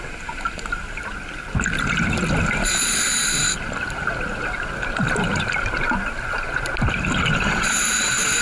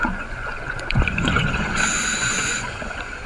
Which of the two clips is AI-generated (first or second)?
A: second